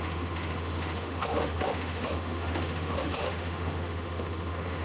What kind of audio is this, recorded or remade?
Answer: remade